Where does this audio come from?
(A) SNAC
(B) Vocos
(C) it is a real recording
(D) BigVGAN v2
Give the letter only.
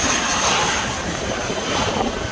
C